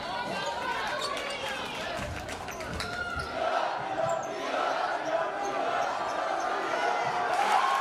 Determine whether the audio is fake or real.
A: real